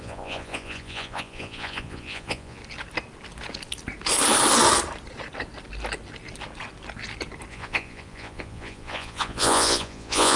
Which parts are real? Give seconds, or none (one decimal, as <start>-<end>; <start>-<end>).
2.6-7.5

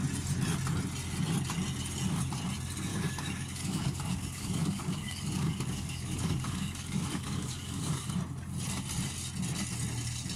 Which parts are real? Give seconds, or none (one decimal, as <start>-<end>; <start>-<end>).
0.0-2.9; 8.1-10.4

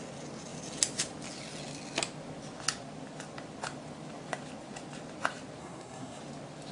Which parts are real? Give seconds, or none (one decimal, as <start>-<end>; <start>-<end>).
0.0-5.6; 6.2-6.7

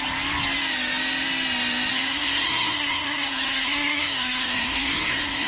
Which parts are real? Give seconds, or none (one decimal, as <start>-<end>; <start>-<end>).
0.0-1.9

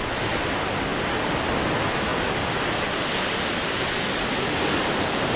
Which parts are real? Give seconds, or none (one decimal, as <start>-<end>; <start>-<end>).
0.0-5.4

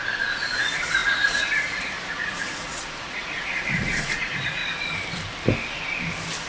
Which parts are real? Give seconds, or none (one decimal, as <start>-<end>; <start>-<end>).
4.6-6.5

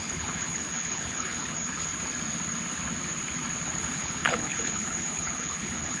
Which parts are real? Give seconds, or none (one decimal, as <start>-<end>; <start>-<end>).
1.9-3.8

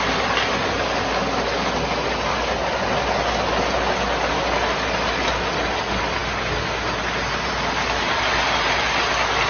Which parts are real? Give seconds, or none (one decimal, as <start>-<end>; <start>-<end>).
0.0-9.5